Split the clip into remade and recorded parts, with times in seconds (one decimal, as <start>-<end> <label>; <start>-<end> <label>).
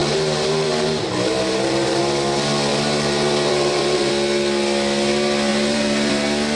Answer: 0.0-2.0 remade; 2.0-2.7 recorded; 2.7-4.1 remade; 4.1-5.5 recorded; 5.5-6.1 remade; 6.1-6.6 recorded